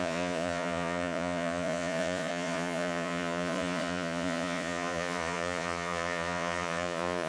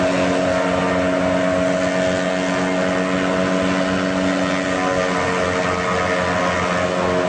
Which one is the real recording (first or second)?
second